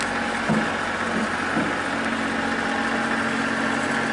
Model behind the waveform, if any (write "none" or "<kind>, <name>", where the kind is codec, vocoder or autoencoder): none